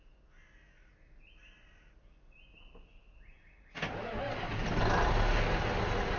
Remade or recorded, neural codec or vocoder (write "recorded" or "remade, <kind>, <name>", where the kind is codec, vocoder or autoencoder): recorded